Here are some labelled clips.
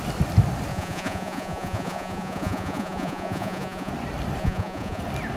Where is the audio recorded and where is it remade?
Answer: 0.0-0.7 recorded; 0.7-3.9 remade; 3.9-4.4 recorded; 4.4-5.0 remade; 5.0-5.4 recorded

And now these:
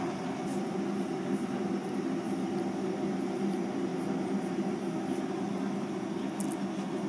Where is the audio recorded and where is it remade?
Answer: 0.0-7.1 recorded

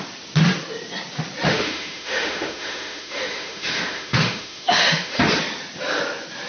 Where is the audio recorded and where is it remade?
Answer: 0.0-1.5 recorded; 1.5-5.2 remade; 5.2-6.5 recorded